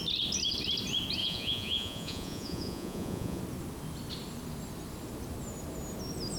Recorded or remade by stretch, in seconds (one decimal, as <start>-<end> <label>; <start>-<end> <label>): 0.0-1.2 recorded; 1.2-3.4 remade; 3.4-6.4 recorded